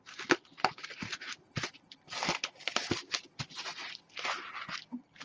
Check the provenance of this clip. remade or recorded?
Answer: recorded